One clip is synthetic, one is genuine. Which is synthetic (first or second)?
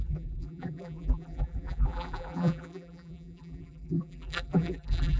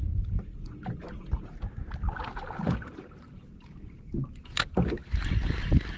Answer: first